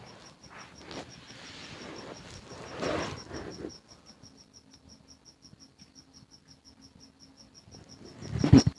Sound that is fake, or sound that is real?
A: real